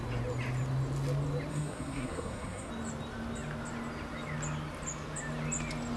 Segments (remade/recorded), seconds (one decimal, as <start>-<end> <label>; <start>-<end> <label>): 0.0-1.5 recorded; 1.5-2.7 remade; 2.7-6.0 recorded